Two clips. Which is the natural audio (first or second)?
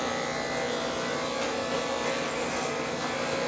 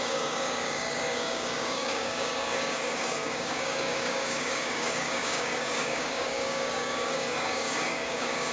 first